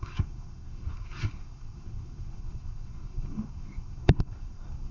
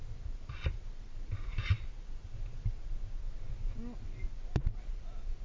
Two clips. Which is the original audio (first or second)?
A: second